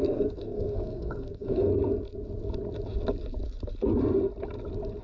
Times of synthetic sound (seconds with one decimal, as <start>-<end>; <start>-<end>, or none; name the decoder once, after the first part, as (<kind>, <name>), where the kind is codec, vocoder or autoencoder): 0.0-1.7 (codec, SNAC)